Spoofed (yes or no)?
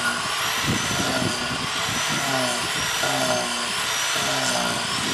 no